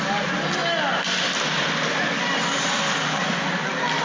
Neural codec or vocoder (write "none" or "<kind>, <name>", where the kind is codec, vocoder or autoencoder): none